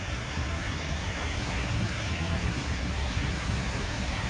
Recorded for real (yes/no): no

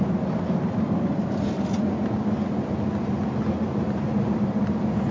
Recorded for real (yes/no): yes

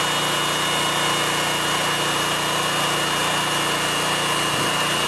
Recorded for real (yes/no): yes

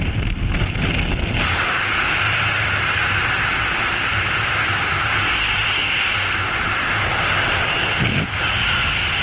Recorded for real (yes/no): yes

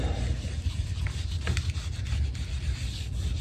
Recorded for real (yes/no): yes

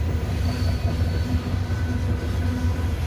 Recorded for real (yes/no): yes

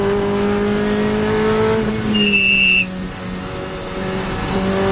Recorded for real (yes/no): yes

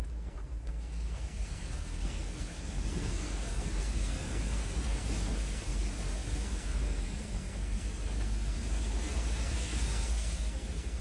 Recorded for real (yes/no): no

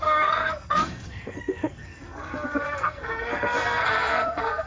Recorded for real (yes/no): no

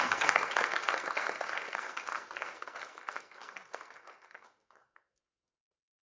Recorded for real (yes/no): no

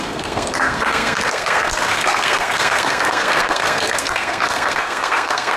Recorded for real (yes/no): no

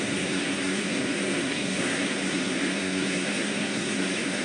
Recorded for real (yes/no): no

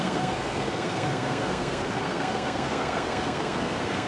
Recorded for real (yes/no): no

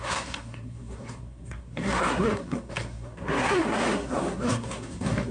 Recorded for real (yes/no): no